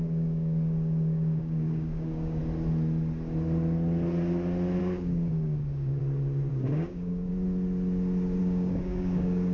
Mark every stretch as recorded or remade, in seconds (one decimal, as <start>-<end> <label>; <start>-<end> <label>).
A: 0.0-2.4 remade; 2.4-4.8 recorded; 4.8-6.0 remade; 6.0-6.5 recorded; 6.5-7.3 remade; 7.3-8.4 recorded; 8.4-9.5 remade